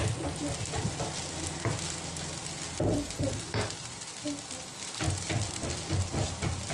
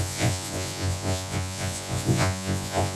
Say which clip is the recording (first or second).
first